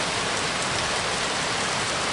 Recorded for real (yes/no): yes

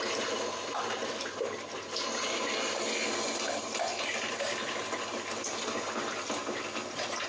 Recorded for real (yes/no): yes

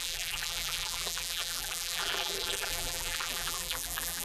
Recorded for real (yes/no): no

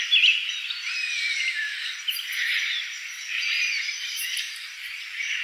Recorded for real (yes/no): no